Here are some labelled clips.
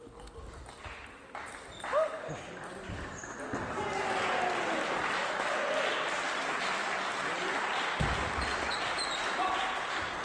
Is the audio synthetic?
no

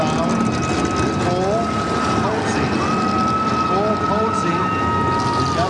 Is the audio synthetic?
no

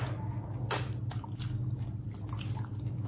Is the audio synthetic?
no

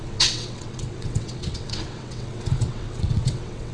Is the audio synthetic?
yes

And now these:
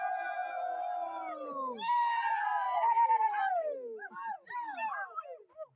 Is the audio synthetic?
no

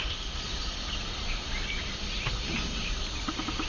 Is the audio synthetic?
no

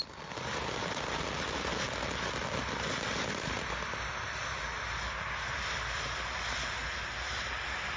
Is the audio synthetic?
no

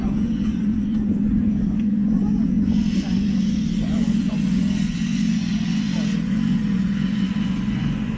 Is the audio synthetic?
yes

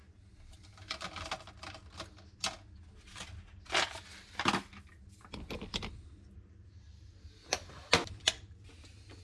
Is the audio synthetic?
no